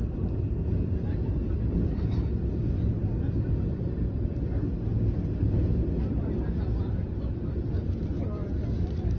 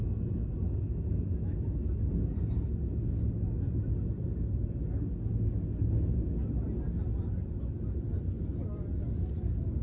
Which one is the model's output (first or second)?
first